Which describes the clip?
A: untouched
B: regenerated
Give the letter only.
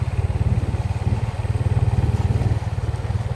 A